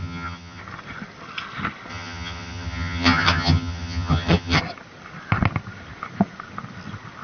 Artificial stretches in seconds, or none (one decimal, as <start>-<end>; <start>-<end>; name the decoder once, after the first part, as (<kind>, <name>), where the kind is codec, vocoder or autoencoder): 0.0-0.6 (vocoder, HiFi-GAN); 1.9-4.6